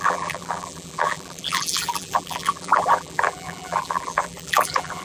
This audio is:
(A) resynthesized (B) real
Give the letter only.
A